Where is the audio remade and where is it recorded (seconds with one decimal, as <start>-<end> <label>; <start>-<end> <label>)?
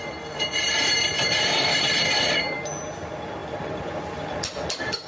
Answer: 0.0-5.1 recorded